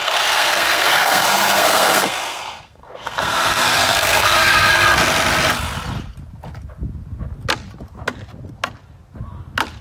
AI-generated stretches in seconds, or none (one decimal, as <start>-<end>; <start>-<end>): 0.0-4.7